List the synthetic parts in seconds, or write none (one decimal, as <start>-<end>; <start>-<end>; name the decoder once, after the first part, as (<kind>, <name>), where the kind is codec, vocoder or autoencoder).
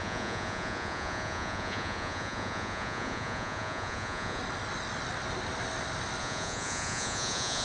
0.0-4.4 (vocoder, Vocos); 6.2-7.6